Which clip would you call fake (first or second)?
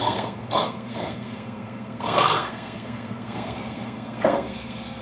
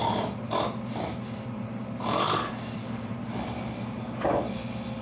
first